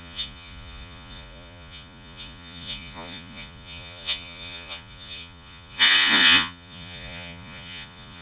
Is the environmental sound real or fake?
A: fake